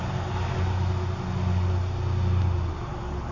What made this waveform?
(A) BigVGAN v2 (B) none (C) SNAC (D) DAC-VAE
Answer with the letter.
B